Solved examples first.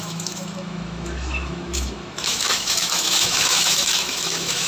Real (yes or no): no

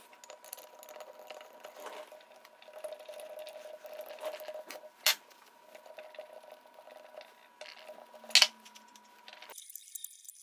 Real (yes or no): yes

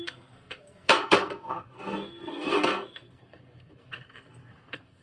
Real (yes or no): no